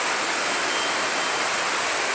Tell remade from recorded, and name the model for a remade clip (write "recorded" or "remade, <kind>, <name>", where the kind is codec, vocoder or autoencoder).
recorded